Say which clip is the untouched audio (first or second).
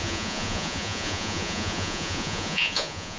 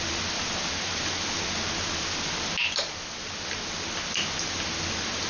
second